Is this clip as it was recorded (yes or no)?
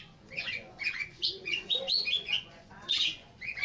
no